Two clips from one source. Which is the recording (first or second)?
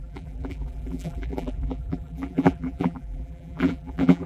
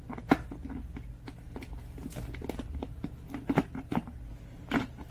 second